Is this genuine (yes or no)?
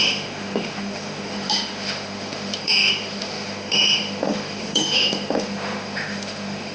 no